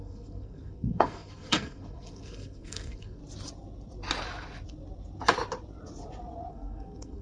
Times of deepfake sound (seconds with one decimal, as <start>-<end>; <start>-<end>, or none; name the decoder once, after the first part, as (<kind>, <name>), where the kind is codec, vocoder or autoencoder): 0.0-3.2 (codec, SNAC); 6.5-7.2

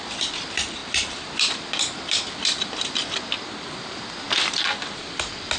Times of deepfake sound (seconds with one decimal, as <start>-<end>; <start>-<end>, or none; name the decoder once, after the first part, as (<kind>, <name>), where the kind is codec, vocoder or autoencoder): none

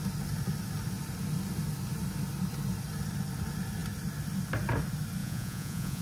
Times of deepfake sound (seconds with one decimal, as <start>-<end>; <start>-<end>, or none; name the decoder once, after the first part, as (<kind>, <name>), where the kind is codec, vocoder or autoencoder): 5.2-6.0 (vocoder, Vocos)

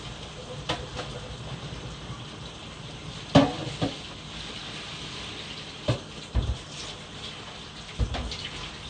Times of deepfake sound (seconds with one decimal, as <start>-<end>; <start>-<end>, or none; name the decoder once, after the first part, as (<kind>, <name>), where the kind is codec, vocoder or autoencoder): none